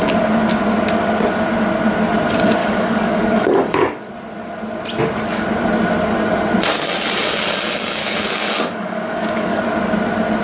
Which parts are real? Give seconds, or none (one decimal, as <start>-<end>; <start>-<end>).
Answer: 0.0-2.6; 4.1-8.0; 9.6-10.4